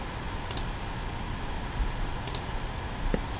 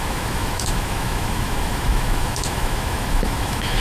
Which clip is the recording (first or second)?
first